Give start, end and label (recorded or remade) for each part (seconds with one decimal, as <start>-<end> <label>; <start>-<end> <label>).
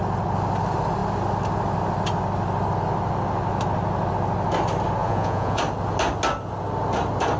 0.0-5.0 recorded; 5.0-5.6 remade; 5.6-7.4 recorded